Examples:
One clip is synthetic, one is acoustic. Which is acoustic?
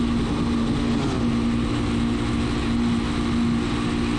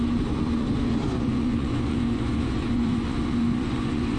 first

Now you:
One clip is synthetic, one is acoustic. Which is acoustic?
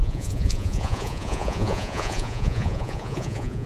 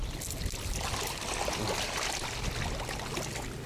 second